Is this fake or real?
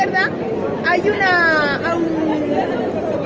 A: real